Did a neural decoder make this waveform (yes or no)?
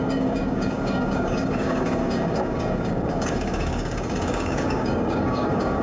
yes